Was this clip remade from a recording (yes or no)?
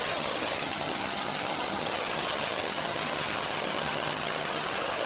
yes